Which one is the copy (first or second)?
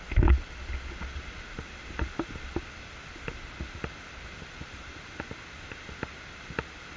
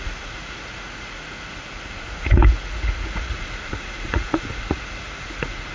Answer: second